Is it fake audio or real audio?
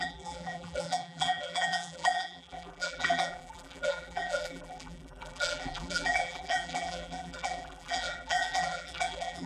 fake